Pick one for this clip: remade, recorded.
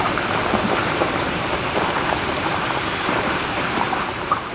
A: remade